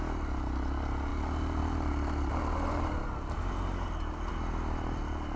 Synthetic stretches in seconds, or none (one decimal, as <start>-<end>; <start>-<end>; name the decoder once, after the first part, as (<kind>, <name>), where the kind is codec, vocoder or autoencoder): none